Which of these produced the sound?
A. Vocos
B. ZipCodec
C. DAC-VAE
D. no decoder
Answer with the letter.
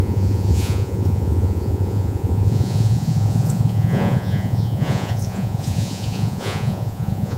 A